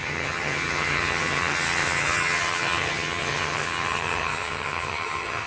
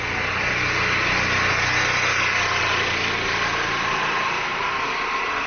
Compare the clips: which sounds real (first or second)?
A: second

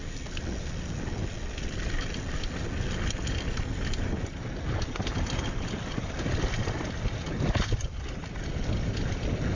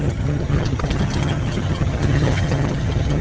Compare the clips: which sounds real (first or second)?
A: first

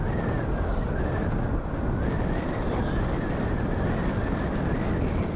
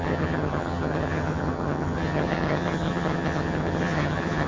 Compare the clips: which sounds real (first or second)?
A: first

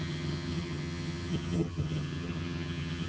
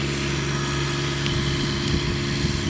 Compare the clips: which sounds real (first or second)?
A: second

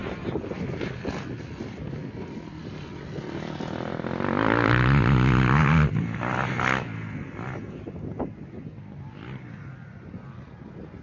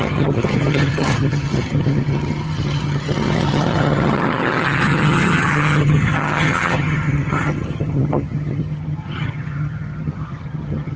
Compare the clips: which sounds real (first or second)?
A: first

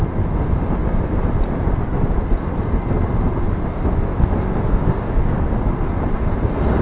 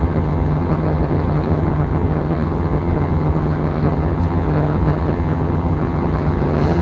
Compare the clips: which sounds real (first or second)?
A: first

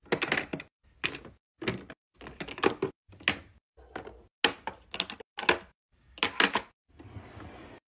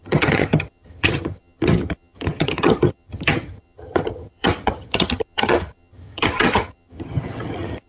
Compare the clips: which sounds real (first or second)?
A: first